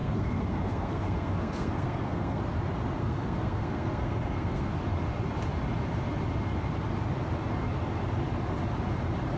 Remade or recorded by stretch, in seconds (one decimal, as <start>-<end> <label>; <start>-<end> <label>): 0.0-2.4 remade; 2.4-3.0 recorded; 3.0-4.7 remade; 4.7-9.4 recorded